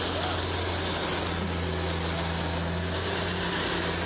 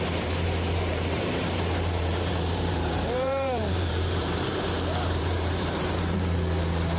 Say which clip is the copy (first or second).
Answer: second